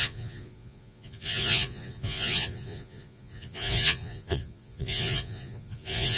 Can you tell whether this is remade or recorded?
remade